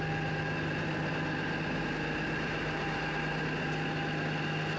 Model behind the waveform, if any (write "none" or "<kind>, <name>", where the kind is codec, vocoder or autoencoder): none